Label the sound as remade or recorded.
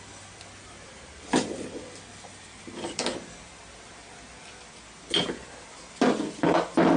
recorded